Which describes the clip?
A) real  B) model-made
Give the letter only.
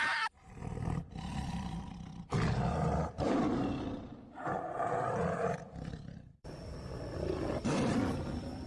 B